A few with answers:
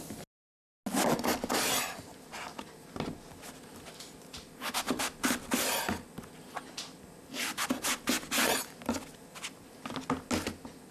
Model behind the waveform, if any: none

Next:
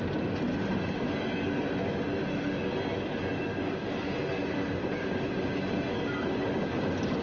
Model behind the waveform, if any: none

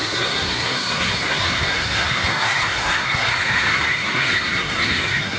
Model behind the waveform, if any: codec, SNAC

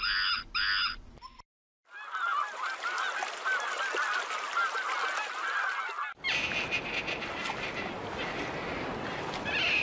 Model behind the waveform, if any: none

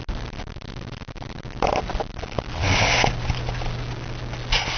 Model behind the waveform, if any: none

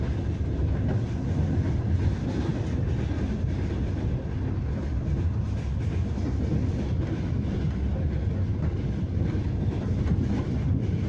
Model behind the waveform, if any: none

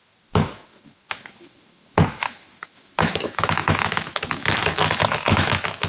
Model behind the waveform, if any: autoencoder, DAC-VAE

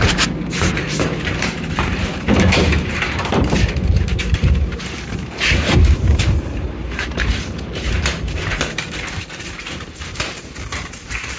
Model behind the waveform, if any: vocoder, BigVGAN v2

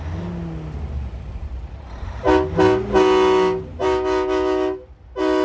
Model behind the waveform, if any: none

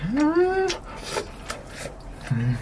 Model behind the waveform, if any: none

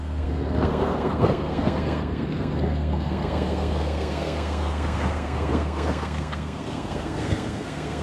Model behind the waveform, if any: codec, SNAC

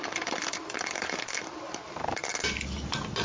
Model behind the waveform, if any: vocoder, BigVGAN v2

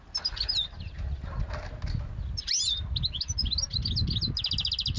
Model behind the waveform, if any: none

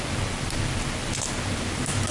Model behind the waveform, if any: none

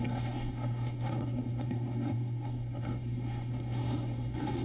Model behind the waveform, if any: codec, SNAC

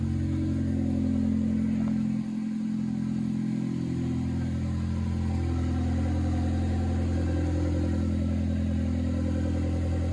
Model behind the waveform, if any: none